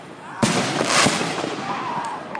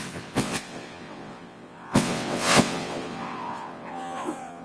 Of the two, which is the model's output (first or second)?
second